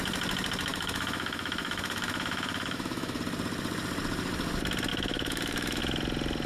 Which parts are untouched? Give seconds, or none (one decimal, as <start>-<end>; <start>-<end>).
0.0-0.7; 3.2-4.9; 5.8-6.5